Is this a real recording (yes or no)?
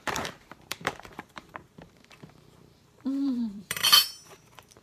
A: no